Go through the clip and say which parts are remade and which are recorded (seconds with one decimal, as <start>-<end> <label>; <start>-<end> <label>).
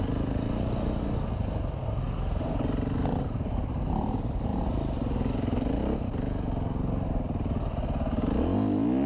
0.0-9.1 recorded